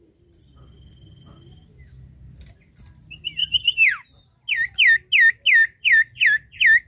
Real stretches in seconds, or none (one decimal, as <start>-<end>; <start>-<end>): 0.0-6.9